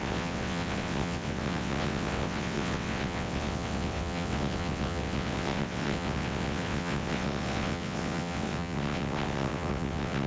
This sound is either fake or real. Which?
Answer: fake